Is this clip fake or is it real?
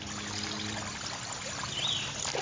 real